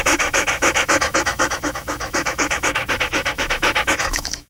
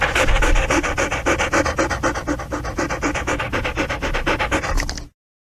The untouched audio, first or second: second